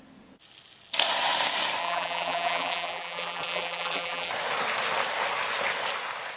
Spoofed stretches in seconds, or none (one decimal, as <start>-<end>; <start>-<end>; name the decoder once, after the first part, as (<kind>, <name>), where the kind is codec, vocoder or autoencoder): 1.8-4.3 (vocoder, BigVGAN v2)